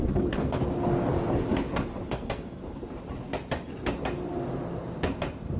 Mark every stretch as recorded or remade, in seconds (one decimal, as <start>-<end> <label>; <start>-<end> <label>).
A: 0.0-0.6 remade; 0.6-2.1 recorded; 2.1-2.6 remade; 2.6-5.6 recorded